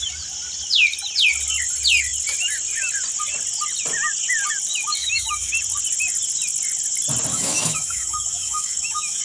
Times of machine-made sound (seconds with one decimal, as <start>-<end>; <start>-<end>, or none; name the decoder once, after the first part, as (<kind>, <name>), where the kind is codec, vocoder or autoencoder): 5.0-5.5 (autoencoder, DAC-VAE); 7.3-9.2